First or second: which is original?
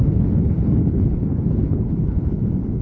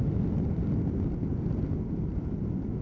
second